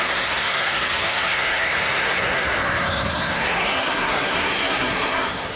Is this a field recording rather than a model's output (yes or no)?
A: no